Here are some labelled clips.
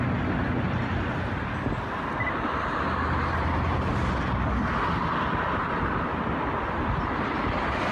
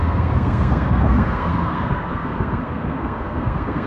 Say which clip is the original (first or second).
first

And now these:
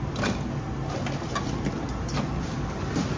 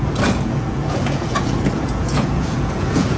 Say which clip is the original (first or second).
first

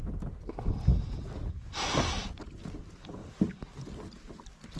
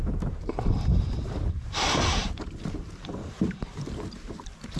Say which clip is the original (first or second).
first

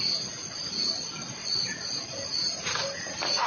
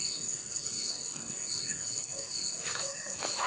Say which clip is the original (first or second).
first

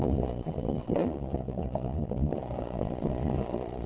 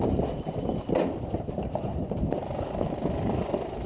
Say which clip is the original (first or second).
second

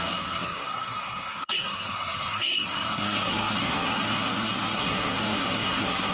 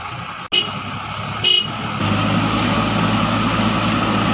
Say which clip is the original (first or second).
second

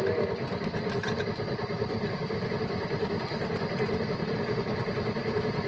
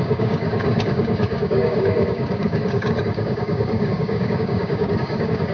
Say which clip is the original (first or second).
first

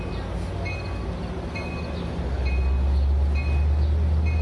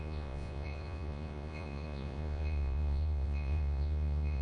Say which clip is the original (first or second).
first